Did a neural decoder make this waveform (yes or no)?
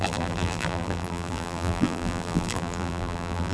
yes